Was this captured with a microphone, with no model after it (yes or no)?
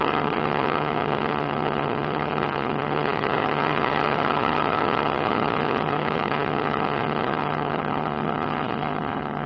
no